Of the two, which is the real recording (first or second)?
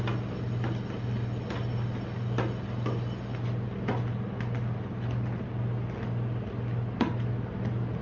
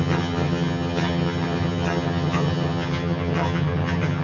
first